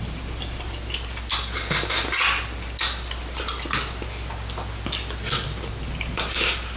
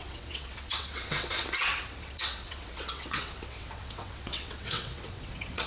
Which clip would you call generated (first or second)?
second